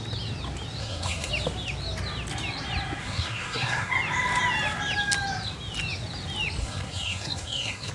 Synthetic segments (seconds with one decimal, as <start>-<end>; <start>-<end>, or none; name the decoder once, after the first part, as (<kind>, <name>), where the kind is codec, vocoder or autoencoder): 0.8-1.3 (codec, SNAC); 3.0-3.9; 6.6-7.9